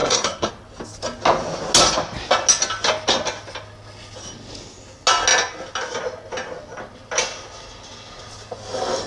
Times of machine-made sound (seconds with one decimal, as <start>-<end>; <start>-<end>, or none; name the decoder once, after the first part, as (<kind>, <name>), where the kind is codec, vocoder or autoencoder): 0.0-0.5 (codec, SNAC)